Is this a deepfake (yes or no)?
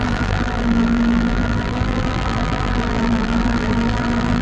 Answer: yes